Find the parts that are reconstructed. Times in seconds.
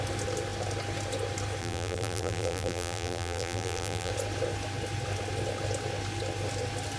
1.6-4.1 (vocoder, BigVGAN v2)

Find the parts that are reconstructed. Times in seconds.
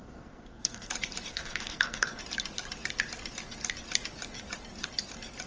0.0-0.9 (codec, SNAC); 1.3-2.2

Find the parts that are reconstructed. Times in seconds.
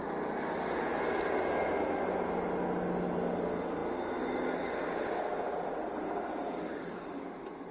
none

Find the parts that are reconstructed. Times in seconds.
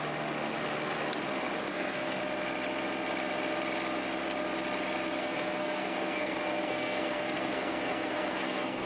1.7-2.2 (codec, SNAC); 5.2-8.9